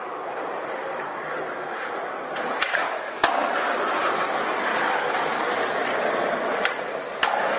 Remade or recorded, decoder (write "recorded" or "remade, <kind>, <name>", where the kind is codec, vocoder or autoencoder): recorded